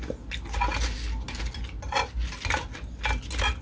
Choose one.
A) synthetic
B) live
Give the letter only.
B